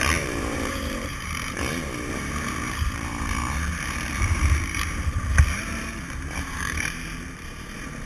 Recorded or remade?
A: remade